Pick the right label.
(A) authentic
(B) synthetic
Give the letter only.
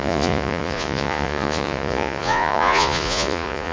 B